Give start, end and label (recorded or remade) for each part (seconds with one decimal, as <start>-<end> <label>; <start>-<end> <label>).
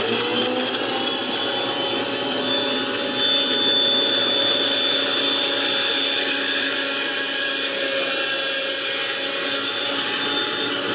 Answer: 0.0-1.2 recorded; 1.2-2.0 remade; 2.0-4.2 recorded; 4.2-8.8 remade; 8.8-10.9 recorded